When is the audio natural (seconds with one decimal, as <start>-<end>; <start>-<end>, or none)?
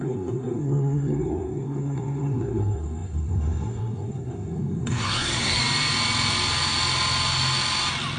5.6-8.2